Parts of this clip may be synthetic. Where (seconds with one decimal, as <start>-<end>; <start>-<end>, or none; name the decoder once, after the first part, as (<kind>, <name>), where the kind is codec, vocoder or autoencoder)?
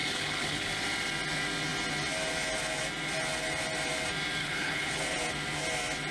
0.0-0.7 (codec, HILCodec); 4.4-5.0